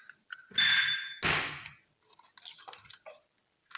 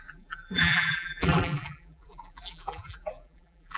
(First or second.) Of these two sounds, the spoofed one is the second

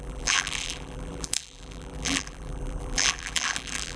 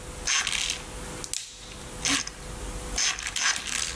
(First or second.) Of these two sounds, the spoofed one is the first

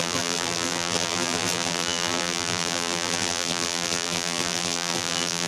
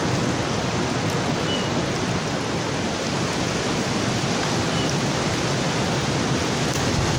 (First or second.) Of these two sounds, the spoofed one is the first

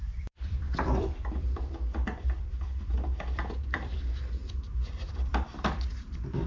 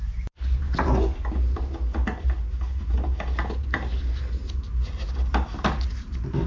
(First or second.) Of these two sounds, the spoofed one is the first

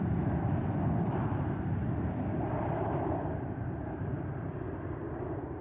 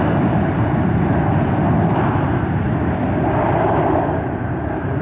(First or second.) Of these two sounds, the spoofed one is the first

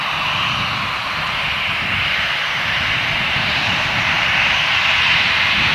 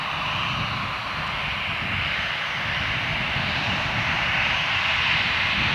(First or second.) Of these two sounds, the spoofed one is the first